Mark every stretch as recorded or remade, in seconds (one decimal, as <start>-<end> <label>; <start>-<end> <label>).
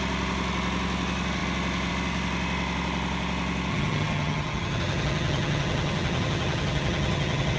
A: 0.0-3.7 recorded; 3.7-7.6 remade